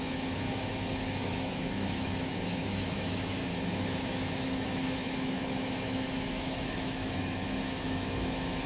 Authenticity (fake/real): fake